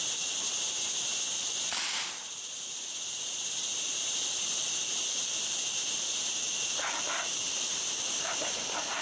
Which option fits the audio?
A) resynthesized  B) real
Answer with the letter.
A